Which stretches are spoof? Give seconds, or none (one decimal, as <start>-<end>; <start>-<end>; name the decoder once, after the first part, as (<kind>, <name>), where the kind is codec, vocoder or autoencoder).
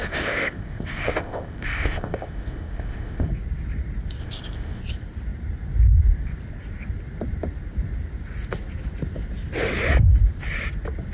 0.0-3.3 (codec, ZipCodec); 4.2-4.8